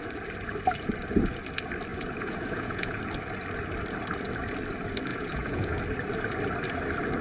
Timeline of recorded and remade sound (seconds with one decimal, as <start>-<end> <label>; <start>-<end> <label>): 0.0-1.9 recorded; 1.9-3.0 remade; 3.0-5.1 recorded; 5.1-5.8 remade; 5.8-7.2 recorded